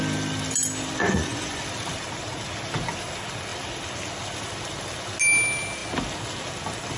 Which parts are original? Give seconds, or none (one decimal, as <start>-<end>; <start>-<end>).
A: 0.0-1.0; 1.6-7.0